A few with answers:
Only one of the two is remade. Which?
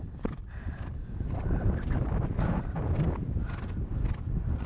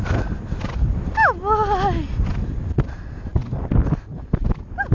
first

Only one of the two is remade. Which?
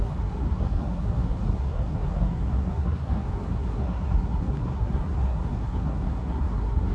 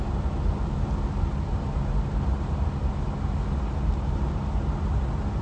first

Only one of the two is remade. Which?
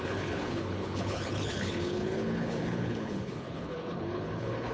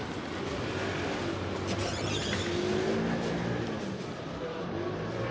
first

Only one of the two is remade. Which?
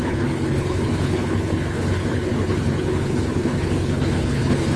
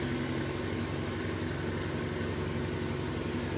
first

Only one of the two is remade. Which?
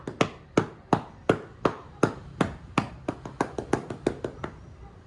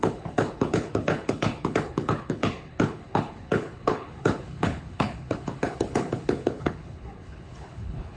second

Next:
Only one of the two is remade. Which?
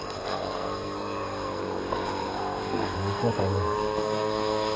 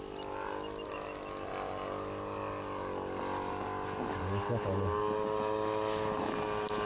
first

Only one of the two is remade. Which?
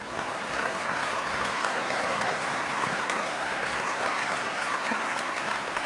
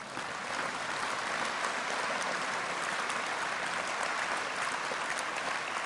first